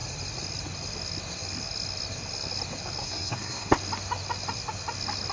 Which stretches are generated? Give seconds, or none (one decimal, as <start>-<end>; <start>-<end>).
3.0-3.7